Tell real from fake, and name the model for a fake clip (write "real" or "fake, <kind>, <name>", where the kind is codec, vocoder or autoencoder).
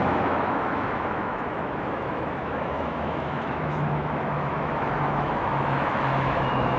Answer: fake, autoencoder, DAC-VAE